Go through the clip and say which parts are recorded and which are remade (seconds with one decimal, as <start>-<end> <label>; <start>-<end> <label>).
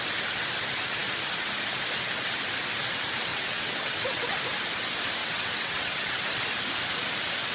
0.0-3.3 recorded; 3.3-4.4 remade; 4.4-5.2 recorded; 5.2-6.2 remade; 6.2-7.5 recorded